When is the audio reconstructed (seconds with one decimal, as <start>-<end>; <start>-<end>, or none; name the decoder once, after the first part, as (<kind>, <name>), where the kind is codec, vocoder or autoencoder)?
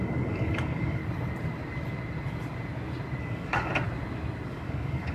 0.0-1.0 (codec, DAC); 3.2-3.7; 4.5-5.1